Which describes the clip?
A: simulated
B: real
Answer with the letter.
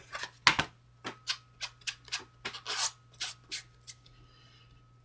B